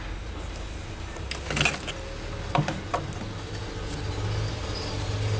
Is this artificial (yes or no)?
no